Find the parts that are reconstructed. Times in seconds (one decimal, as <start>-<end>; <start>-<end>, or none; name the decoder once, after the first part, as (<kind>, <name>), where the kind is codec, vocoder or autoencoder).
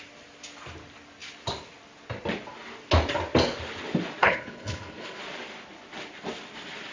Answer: 4.2-5.2 (codec, HILCodec)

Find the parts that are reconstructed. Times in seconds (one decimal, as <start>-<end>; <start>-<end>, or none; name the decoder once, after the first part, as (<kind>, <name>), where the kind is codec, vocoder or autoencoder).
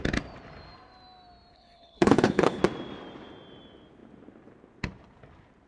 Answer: 1.5-2.6 (codec, HILCodec)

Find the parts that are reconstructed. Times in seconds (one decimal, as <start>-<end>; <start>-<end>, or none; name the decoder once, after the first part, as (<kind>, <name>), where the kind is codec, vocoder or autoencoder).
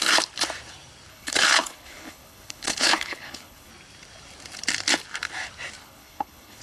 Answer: 1.1-3.7 (codec, HILCodec); 5.8-6.6